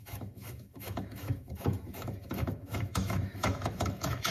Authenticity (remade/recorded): remade